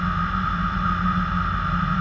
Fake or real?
real